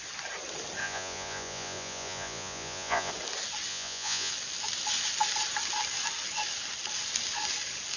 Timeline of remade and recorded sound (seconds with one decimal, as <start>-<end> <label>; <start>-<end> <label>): 0.0-0.8 recorded; 0.8-3.1 remade; 3.1-3.7 recorded; 3.7-4.3 remade; 4.3-8.0 recorded